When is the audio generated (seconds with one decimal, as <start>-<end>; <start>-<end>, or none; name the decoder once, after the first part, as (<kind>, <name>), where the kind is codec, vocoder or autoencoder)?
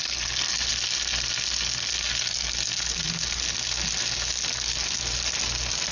none